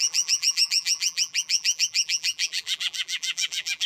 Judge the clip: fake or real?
fake